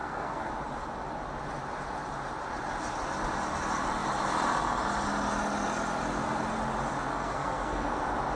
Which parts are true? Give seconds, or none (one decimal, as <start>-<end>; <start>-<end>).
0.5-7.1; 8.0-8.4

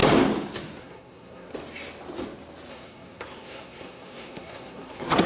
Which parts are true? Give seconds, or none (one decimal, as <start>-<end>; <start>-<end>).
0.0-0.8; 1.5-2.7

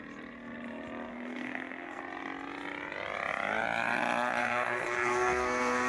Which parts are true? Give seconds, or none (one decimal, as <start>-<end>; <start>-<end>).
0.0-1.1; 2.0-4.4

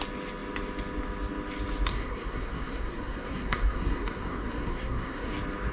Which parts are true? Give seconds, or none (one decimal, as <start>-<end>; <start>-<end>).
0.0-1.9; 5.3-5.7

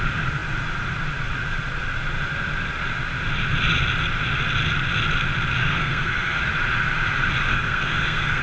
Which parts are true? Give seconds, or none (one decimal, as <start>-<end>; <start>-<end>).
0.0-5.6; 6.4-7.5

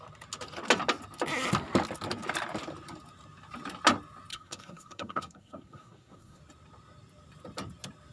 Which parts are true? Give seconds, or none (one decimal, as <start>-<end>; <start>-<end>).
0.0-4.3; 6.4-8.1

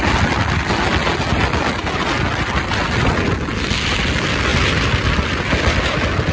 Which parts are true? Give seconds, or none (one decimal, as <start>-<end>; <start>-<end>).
0.0-6.3